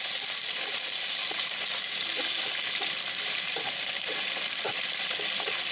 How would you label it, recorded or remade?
recorded